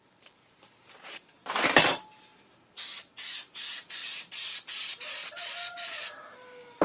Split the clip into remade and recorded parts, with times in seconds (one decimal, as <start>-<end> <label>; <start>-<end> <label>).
0.0-6.8 remade